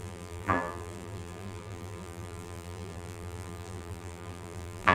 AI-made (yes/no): yes